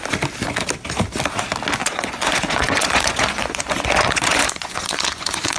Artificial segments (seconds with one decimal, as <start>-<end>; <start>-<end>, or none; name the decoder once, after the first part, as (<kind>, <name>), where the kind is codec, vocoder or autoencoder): 1.8-5.6 (vocoder, Vocos)